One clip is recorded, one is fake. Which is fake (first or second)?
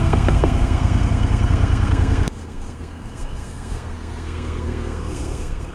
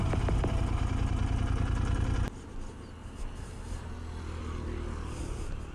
first